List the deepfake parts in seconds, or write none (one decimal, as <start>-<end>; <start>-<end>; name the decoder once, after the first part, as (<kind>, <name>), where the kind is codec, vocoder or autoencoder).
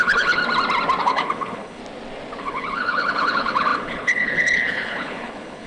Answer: 0.0-0.4 (codec, HILCodec); 1.0-1.8; 2.4-5.7